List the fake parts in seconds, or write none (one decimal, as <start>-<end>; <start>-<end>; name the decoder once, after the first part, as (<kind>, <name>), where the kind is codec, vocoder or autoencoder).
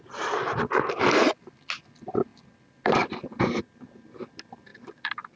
none